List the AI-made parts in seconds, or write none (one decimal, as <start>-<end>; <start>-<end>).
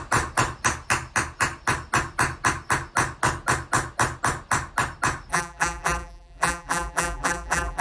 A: 5.3-7.8